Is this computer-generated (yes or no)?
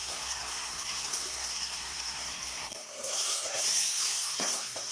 yes